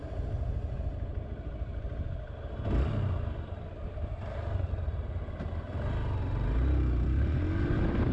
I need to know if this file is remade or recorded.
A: recorded